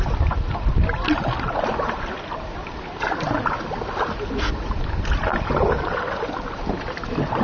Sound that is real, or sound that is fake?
real